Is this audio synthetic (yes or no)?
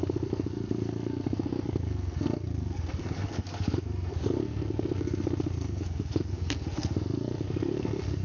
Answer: yes